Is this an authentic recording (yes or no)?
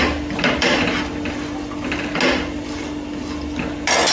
yes